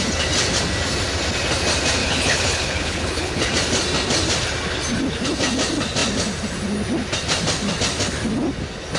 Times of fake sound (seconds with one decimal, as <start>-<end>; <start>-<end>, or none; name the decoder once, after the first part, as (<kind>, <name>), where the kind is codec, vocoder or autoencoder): 2.0-3.5 (codec, HILCodec)